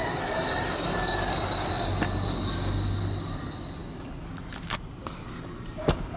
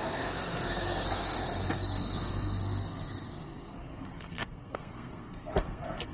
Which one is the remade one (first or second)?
second